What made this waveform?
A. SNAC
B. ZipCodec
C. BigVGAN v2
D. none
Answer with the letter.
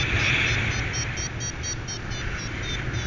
D